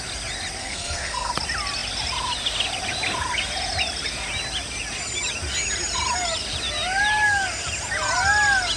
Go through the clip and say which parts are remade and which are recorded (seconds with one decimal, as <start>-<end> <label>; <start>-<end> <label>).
0.0-0.6 recorded; 0.6-1.3 remade; 1.3-8.8 recorded